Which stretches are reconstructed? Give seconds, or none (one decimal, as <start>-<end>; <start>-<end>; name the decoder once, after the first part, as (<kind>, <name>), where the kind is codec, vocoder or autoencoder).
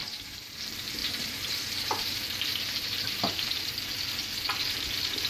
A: 0.0-0.6 (vocoder, BigVGAN v2); 1.0-3.7